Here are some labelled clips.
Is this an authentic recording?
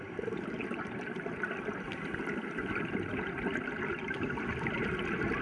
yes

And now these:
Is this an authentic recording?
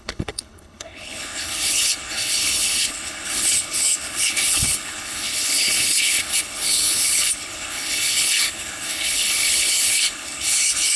no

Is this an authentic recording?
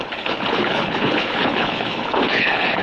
no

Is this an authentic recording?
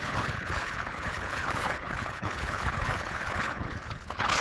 no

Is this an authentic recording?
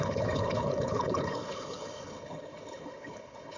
no